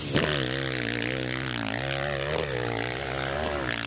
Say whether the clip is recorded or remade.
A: recorded